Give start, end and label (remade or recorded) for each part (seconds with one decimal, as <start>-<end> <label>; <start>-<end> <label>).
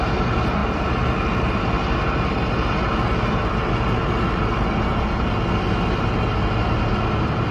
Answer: 0.0-0.6 recorded; 0.6-1.6 remade; 1.6-7.5 recorded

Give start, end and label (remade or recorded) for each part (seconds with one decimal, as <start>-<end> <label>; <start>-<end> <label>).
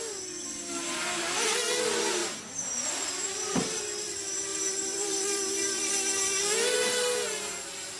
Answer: 0.0-2.2 recorded; 2.2-3.8 remade; 3.8-4.5 recorded; 4.5-5.9 remade; 5.9-8.0 recorded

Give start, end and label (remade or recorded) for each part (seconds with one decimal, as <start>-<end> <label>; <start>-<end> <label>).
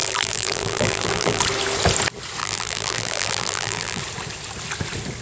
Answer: 0.0-1.4 remade; 1.4-2.4 recorded; 2.4-4.0 remade; 4.0-5.2 recorded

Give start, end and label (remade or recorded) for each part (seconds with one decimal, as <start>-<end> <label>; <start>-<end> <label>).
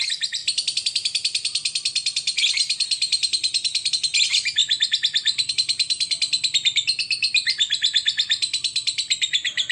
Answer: 0.0-9.7 recorded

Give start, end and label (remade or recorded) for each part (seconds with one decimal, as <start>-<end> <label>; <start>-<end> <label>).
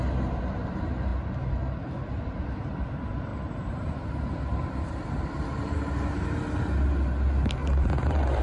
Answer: 0.0-3.3 recorded; 3.3-5.9 remade; 5.9-7.6 recorded; 7.6-8.4 remade